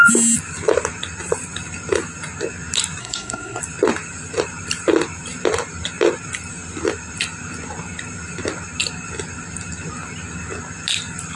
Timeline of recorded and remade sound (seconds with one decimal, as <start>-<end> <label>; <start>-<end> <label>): 0.0-3.0 recorded; 3.0-3.6 remade; 3.6-11.4 recorded